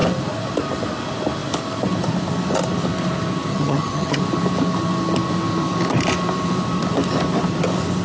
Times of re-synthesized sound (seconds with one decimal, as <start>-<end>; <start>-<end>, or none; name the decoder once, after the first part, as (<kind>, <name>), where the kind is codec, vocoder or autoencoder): 3.5-4.2 (vocoder, HiFi-GAN)